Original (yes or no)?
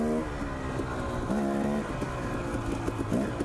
yes